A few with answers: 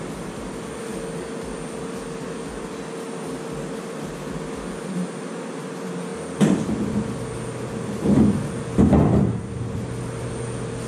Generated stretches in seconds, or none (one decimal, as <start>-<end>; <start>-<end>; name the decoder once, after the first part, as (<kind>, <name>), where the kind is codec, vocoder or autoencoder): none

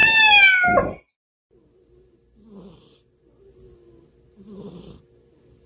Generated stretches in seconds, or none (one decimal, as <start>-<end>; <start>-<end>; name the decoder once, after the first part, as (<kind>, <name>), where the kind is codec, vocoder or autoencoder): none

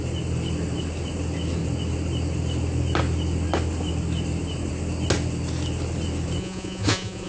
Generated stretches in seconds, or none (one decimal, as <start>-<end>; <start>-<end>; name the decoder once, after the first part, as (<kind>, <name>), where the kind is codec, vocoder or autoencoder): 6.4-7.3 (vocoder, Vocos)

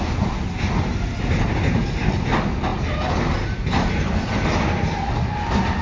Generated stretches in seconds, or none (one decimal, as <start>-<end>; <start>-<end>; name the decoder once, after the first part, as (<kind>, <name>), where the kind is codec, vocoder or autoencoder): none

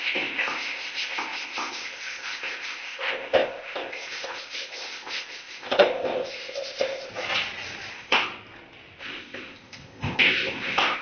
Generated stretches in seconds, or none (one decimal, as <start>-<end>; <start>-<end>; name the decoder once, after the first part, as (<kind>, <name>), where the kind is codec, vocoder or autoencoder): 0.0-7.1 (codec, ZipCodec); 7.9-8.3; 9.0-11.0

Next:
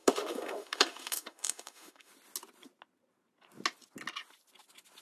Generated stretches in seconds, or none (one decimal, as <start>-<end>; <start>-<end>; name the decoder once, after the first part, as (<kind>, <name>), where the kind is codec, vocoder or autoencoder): 0.0-2.1 (autoencoder, DAC-VAE)

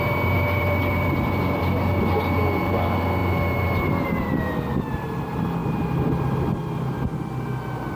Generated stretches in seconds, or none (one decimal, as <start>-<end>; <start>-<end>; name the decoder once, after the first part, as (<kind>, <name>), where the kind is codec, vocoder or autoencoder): none

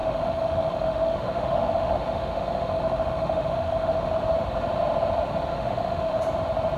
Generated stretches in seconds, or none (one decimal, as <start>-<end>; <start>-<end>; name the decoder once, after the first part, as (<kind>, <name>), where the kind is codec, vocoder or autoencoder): 0.0-4.1 (autoencoder, DAC-VAE); 5.5-6.2